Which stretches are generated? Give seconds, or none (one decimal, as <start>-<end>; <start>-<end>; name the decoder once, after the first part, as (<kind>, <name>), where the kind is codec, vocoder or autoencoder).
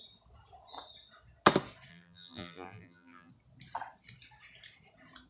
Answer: 1.9-3.3 (vocoder, BigVGAN v2)